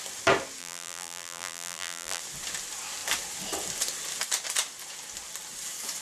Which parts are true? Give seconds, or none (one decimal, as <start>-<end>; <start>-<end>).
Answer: 0.0-0.6; 2.2-6.0